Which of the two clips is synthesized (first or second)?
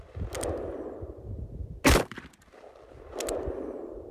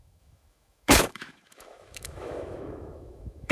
second